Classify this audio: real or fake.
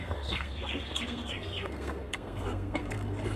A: fake